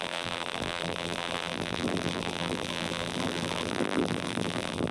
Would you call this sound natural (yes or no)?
no